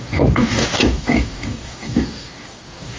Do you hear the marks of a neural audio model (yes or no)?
yes